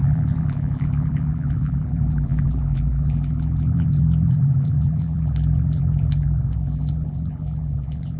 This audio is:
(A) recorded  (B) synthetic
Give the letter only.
B